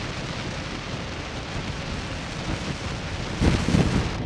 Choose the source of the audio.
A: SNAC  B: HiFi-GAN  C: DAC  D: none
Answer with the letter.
D